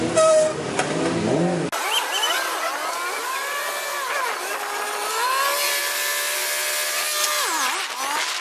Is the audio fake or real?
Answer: real